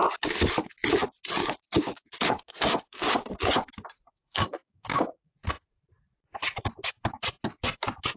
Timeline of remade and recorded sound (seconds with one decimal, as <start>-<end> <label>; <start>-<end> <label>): 0.0-1.4 recorded; 1.4-3.3 remade; 3.3-4.1 recorded; 4.1-5.3 remade; 5.3-8.2 recorded